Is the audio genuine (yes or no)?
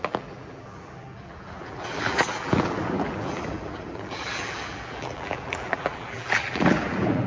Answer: no